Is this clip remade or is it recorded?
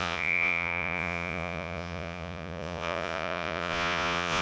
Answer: remade